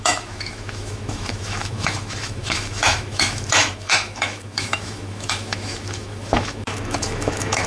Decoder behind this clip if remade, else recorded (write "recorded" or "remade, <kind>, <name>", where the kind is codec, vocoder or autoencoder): remade, autoencoder, DAC-VAE